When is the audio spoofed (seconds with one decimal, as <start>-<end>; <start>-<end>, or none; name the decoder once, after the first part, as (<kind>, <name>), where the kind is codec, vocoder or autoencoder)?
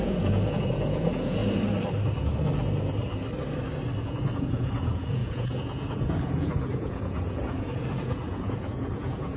0.0-1.4 (vocoder, Vocos); 4.0-9.4